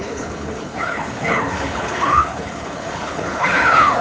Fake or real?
fake